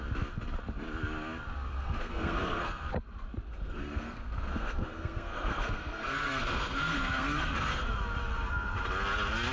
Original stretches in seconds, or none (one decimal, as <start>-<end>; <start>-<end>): 0.0-1.7; 2.9-3.5; 7.9-9.5